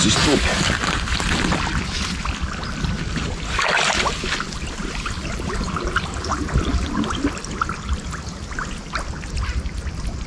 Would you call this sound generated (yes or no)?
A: no